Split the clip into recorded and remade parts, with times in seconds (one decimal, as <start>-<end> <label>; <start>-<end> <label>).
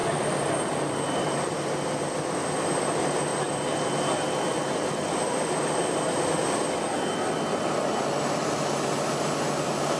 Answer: 0.0-10.0 recorded